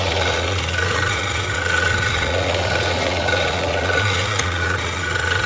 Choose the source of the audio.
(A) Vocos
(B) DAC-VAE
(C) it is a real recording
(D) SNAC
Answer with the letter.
A